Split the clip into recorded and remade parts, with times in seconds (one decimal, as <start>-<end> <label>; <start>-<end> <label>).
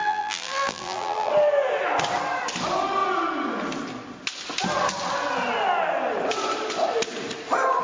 0.0-1.3 remade; 1.3-7.8 recorded